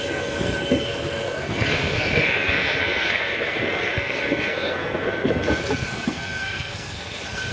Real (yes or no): no